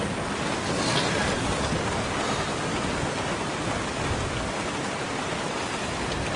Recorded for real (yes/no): yes